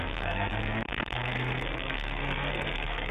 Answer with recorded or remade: remade